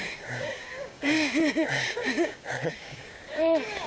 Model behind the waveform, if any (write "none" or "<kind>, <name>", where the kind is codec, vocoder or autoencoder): codec, DAC